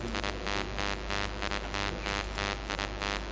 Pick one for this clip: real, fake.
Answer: real